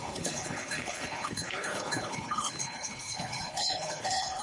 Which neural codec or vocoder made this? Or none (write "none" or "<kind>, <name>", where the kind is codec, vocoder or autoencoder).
codec, HILCodec